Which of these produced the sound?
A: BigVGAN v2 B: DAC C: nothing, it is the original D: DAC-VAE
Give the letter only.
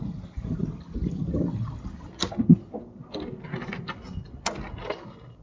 C